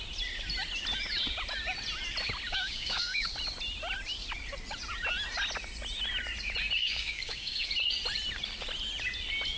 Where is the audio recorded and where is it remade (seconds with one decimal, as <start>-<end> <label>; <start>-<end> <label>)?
0.0-2.5 recorded; 2.5-3.3 remade; 3.3-6.8 recorded; 6.8-7.7 remade; 7.7-9.6 recorded